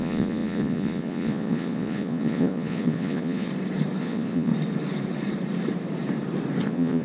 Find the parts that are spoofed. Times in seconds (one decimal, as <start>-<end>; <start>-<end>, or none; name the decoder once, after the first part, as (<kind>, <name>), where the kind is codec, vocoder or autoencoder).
0.0-3.5 (vocoder, Vocos); 4.0-4.5; 6.6-7.0